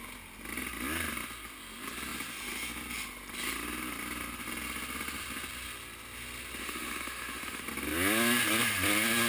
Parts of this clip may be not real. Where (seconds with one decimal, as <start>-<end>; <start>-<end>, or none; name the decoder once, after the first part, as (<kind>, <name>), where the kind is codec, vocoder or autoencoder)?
6.6-7.6 (autoencoder, DAC-VAE)